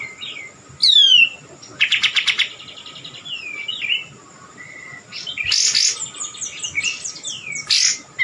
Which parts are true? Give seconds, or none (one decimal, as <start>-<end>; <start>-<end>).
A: 0.0-8.2